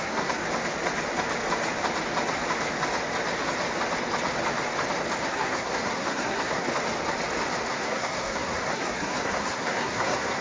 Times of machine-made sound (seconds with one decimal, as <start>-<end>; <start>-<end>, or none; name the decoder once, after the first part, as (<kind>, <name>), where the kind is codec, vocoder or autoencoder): 0.0-0.4 (codec, SNAC); 5.3-6.7; 7.7-10.4